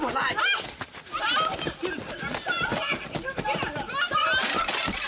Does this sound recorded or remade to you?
recorded